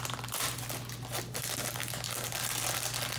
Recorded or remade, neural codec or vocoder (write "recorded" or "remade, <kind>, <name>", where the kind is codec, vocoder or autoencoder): recorded